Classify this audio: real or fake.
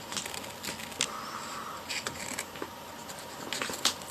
real